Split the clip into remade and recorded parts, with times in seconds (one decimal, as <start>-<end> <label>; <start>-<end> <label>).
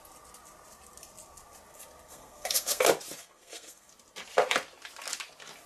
0.0-2.1 recorded; 2.1-2.8 remade; 2.8-3.2 recorded; 3.2-3.9 remade; 3.9-5.7 recorded